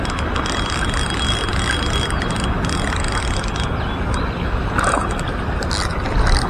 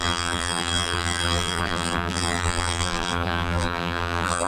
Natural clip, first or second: first